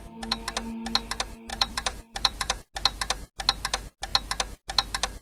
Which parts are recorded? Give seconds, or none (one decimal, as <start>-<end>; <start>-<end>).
0.0-1.5; 2.6-5.2